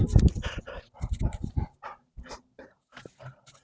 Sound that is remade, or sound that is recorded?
recorded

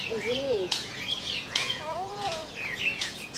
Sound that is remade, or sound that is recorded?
remade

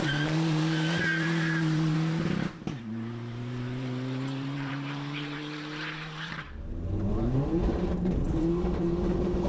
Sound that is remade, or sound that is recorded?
remade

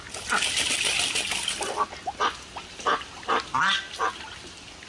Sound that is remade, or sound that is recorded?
recorded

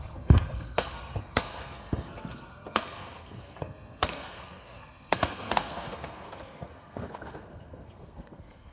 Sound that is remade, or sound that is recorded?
remade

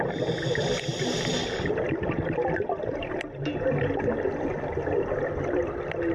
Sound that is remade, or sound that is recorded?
recorded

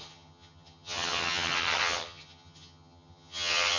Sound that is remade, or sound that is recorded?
remade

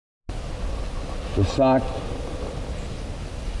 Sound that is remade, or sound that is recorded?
recorded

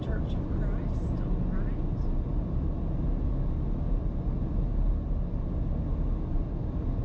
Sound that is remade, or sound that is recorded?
recorded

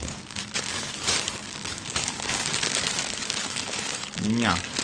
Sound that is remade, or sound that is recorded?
remade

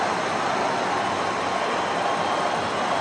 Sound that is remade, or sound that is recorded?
recorded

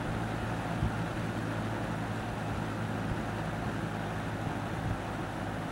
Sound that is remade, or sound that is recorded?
recorded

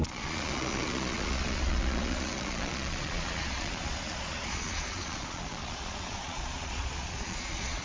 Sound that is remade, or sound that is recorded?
remade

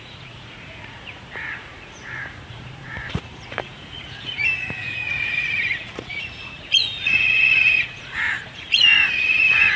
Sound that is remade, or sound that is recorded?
remade